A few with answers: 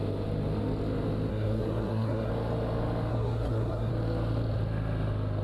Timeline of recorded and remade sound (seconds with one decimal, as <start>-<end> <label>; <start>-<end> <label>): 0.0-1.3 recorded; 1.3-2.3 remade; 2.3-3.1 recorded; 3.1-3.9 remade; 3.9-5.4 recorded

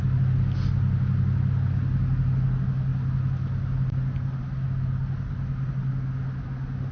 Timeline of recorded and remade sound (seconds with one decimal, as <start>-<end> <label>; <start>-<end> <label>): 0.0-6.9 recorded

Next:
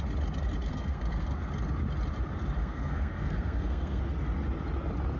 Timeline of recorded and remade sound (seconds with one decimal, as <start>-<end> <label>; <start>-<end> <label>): 0.0-0.7 recorded; 0.7-1.5 remade; 1.5-2.6 recorded; 2.6-4.0 remade; 4.0-5.2 recorded